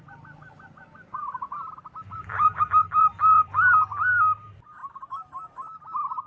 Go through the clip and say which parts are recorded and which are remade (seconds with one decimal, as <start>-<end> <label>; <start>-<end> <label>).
0.0-2.2 recorded; 2.2-3.7 remade; 3.7-6.3 recorded